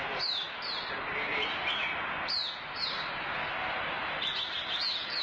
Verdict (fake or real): real